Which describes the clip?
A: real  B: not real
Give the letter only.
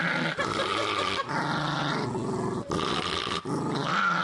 A